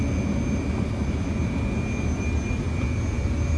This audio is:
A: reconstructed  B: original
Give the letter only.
B